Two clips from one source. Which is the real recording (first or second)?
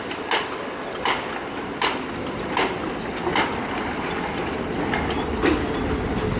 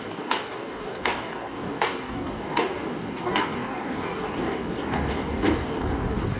first